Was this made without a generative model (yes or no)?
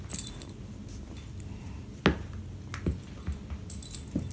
yes